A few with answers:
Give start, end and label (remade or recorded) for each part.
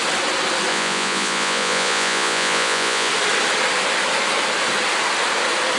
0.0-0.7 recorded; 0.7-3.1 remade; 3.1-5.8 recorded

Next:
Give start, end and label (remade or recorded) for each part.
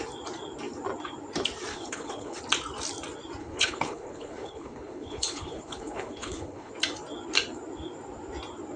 0.0-1.7 recorded; 1.7-2.4 remade; 2.4-3.4 recorded; 3.4-6.7 remade; 6.7-8.8 recorded